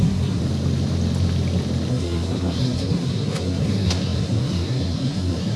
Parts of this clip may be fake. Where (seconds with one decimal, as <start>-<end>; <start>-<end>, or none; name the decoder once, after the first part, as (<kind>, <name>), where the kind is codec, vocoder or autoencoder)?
0.0-0.4 (codec, SNAC); 1.9-5.6